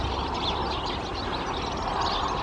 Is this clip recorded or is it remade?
recorded